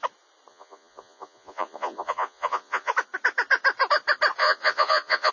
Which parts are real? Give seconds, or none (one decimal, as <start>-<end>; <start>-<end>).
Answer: 0.0-0.5; 2.9-4.4